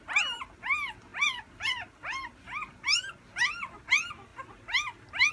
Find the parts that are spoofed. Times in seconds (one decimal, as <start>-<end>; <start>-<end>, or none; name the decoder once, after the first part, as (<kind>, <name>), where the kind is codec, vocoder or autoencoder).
none